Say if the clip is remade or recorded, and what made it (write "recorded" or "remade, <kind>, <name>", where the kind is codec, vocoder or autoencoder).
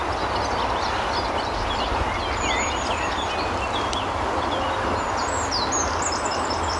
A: recorded